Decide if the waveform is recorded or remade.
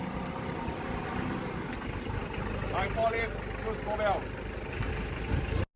recorded